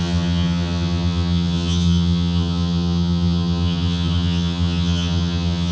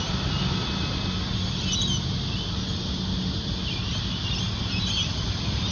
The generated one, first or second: first